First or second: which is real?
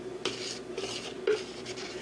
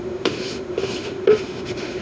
first